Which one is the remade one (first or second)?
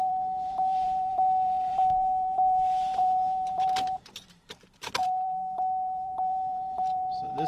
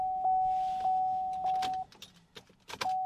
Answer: first